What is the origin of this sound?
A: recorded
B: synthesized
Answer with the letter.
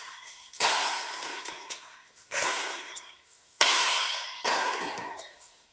B